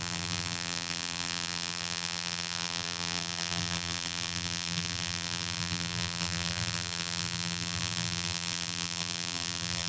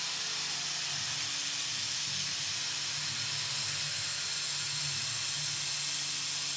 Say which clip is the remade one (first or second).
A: first